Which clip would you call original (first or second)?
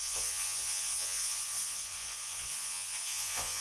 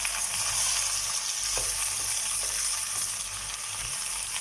second